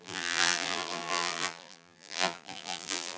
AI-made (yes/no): yes